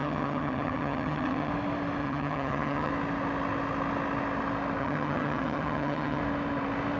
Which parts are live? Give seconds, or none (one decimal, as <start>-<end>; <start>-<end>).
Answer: 1.5-2.0; 2.9-4.8; 6.2-7.0